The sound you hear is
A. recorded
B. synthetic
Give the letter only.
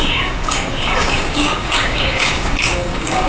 B